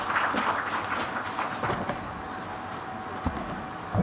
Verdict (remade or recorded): recorded